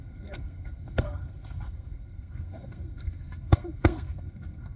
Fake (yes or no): yes